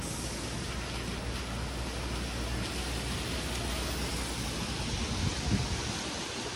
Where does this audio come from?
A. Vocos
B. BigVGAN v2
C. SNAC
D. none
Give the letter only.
D